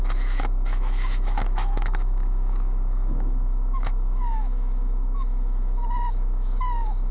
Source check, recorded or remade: remade